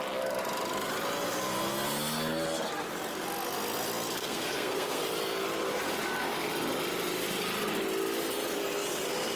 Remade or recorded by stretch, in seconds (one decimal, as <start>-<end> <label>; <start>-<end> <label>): 0.0-4.2 recorded; 4.2-5.0 remade; 5.0-9.4 recorded

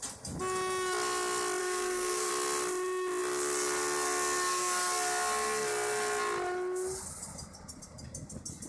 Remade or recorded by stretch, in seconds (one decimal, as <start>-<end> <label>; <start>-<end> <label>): 0.0-1.6 recorded; 1.6-2.3 remade; 2.3-8.7 recorded

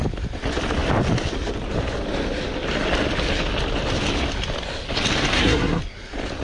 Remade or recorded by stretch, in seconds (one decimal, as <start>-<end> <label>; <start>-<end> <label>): 0.0-5.3 recorded; 5.3-5.8 remade; 5.8-6.4 recorded

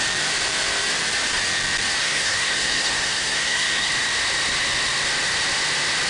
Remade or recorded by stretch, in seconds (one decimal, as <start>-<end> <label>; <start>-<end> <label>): 0.0-2.0 recorded; 2.0-3.9 remade; 3.9-6.1 recorded